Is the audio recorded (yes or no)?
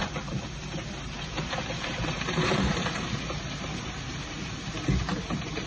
no